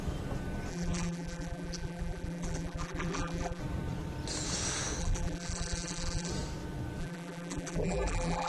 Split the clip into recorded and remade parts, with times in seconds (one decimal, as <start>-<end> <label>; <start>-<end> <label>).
0.0-0.7 recorded; 0.7-3.6 remade; 3.6-5.0 recorded; 5.0-6.3 remade; 6.3-7.0 recorded; 7.0-8.5 remade